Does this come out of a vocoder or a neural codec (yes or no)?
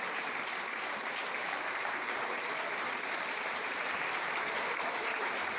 yes